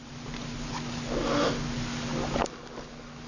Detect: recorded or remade recorded